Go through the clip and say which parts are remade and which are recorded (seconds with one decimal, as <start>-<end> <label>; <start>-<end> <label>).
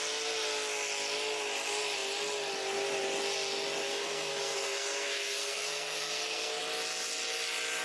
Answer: 0.0-3.9 recorded; 3.9-6.6 remade; 6.6-7.8 recorded